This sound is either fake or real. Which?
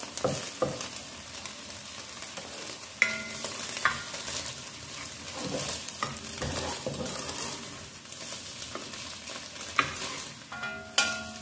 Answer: real